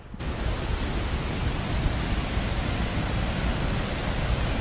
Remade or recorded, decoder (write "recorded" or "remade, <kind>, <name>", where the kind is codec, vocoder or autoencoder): recorded